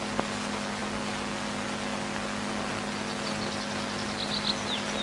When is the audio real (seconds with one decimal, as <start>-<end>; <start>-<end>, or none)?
0.0-5.0